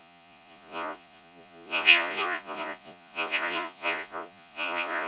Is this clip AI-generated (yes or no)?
yes